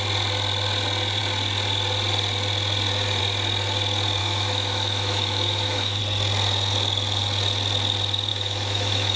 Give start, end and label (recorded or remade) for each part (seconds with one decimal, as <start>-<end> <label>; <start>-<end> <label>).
0.0-4.2 recorded; 4.2-6.0 remade; 6.0-8.3 recorded; 8.3-9.2 remade